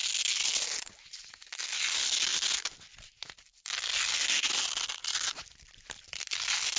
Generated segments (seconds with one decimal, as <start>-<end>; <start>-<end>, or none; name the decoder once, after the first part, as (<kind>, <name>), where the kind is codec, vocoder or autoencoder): none